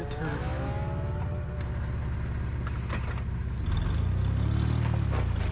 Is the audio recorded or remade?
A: recorded